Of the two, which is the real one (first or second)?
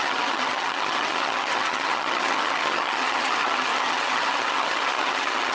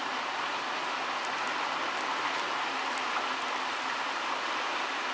second